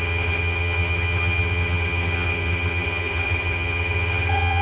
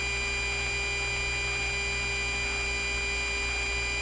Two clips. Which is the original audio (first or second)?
second